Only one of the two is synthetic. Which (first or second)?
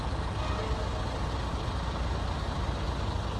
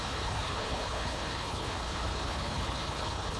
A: second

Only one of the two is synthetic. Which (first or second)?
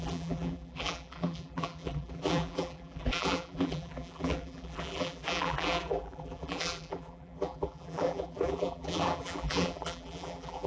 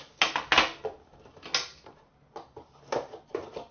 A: first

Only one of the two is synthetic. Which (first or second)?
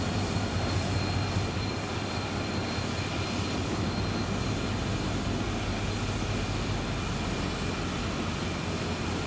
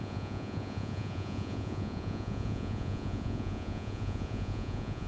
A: second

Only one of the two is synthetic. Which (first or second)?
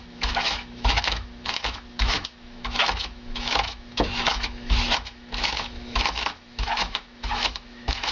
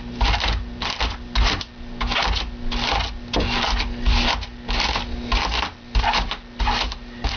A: first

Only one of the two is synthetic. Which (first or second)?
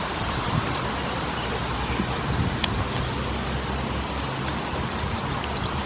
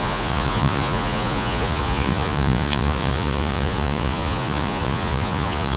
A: second